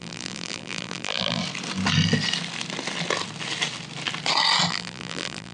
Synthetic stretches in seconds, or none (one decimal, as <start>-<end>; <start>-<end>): 0.0-1.4; 4.7-5.5